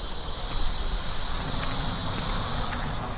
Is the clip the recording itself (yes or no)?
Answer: yes